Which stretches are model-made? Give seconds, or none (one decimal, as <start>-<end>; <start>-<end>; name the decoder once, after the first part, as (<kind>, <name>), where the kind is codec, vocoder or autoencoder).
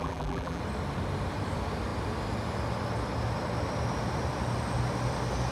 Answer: 0.0-0.6 (vocoder, BigVGAN v2)